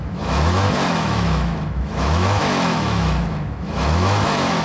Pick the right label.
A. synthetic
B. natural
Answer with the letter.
A